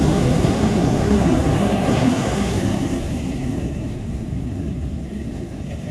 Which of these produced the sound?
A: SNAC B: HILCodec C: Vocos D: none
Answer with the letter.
A